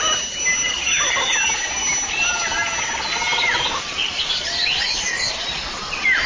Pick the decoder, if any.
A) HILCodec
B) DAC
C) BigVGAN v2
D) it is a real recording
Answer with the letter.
D